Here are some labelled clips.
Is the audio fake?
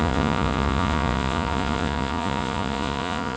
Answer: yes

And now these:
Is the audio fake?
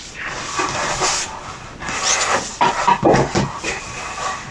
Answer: no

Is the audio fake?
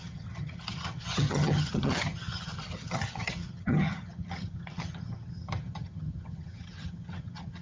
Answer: yes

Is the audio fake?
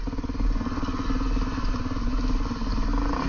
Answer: no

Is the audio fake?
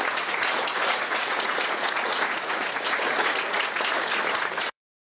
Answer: yes